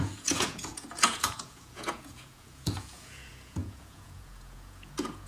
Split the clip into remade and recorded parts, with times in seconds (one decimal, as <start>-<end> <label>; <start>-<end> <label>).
0.0-5.3 remade